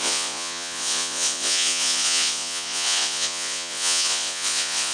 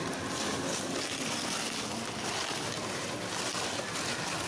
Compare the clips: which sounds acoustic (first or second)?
second